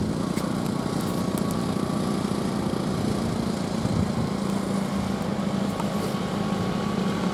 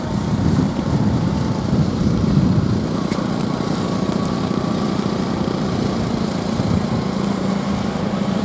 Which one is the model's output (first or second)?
second